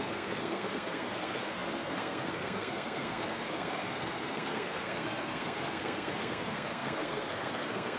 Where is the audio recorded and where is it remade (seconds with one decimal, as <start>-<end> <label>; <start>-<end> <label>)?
0.0-8.0 remade